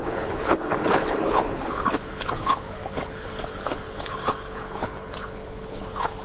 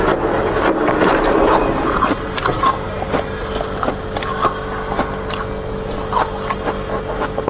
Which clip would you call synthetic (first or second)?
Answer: first